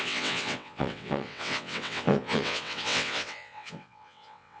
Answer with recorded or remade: remade